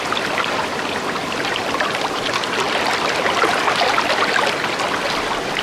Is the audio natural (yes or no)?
yes